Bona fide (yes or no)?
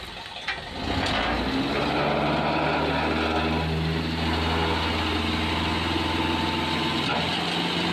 yes